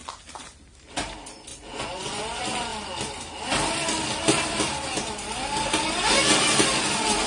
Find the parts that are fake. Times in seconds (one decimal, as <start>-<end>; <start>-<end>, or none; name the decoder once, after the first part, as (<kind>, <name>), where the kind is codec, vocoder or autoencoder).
1.5-2.2 (vocoder, Vocos)